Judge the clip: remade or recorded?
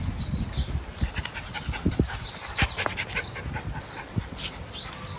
recorded